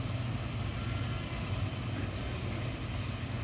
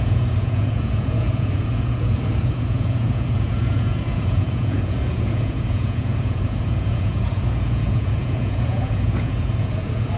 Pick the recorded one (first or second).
first